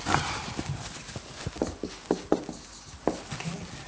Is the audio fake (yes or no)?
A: no